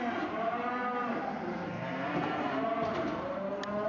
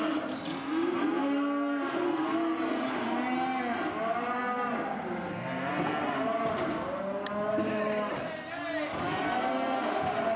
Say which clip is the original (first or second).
second